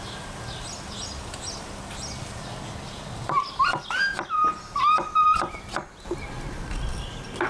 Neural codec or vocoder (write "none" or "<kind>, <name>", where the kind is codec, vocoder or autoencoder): none